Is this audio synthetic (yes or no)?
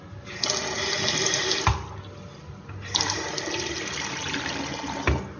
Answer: no